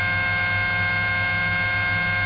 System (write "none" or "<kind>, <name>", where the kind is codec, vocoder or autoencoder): none